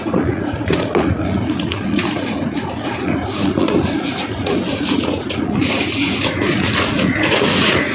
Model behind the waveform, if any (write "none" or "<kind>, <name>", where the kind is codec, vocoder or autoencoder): vocoder, Vocos